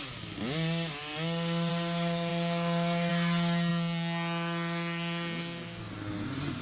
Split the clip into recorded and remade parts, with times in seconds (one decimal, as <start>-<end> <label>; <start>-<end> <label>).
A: 0.0-6.6 recorded